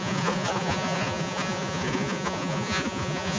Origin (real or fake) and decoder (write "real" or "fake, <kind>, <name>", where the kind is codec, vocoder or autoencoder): fake, vocoder, Vocos